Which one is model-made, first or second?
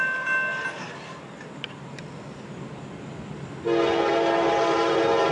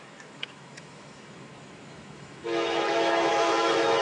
second